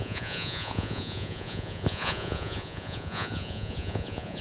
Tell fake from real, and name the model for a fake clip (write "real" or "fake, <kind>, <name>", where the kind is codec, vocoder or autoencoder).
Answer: fake, vocoder, Vocos